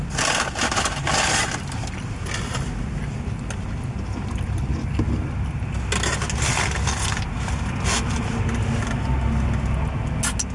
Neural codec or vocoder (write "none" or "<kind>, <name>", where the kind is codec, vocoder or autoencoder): none